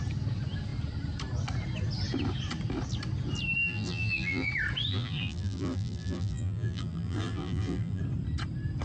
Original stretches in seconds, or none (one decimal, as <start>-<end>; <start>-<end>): 0.0-3.6; 4.5-4.9; 8.0-8.8